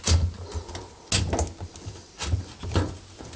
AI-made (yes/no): no